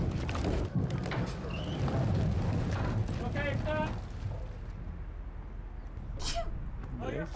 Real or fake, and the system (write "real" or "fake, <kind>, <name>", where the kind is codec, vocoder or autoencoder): real